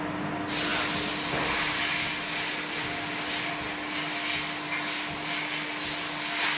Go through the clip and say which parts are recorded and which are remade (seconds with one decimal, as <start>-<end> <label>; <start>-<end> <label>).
0.0-6.6 recorded